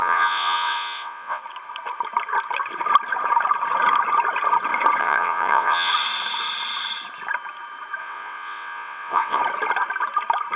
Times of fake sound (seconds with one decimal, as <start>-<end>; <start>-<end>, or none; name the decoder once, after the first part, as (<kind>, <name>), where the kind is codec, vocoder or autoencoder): 0.0-1.4 (vocoder, WaveNeXt); 5.0-5.9; 8.0-9.4